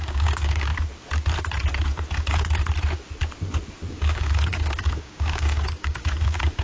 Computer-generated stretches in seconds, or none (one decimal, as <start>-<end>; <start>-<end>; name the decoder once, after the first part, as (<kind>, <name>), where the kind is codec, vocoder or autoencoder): 0.0-0.7 (codec, DAC); 3.9-6.6